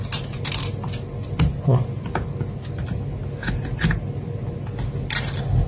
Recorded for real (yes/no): yes